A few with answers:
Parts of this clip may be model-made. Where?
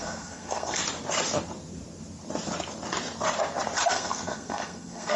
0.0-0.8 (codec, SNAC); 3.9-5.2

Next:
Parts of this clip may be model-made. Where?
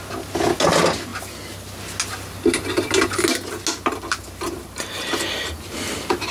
none